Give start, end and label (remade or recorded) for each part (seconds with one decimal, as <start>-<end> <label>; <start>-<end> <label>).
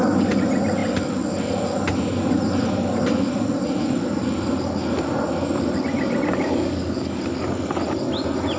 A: 0.0-6.3 recorded; 6.3-7.2 remade; 7.2-8.6 recorded